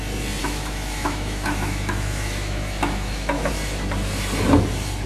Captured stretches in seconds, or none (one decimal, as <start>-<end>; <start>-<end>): 0.0-0.4; 3.5-5.1

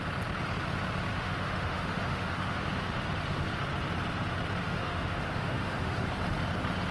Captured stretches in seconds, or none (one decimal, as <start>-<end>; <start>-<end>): 0.0-1.1; 2.6-4.6; 6.1-6.9

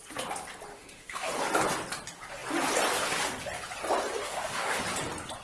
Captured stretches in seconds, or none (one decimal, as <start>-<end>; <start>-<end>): 0.0-0.7; 1.3-4.2; 4.8-5.4